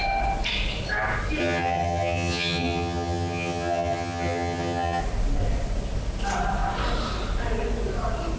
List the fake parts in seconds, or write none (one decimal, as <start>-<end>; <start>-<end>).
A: 1.4-5.0